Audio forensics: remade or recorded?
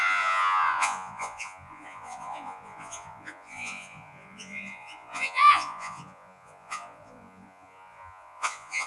remade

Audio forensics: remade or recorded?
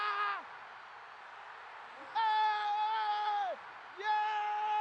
recorded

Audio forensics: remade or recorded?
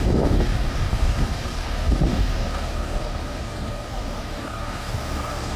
remade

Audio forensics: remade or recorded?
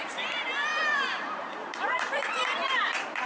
remade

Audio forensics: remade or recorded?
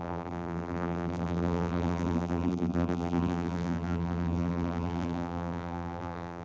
remade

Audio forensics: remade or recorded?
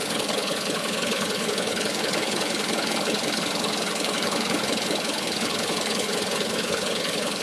remade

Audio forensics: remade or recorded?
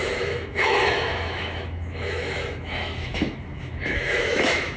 remade